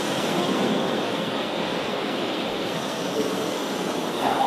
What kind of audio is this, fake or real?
fake